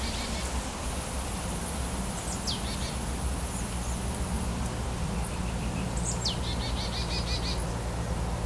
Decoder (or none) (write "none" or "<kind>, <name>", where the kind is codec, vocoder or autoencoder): none